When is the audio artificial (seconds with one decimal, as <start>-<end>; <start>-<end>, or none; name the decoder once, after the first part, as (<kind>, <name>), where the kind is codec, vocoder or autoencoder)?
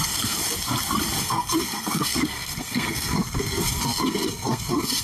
0.0-0.4 (codec, SNAC); 1.2-5.0